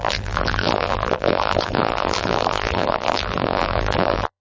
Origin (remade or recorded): remade